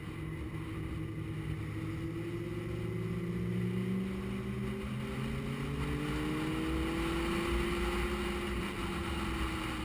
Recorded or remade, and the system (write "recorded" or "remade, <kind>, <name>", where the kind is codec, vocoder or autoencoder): recorded